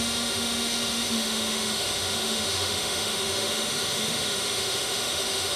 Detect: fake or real fake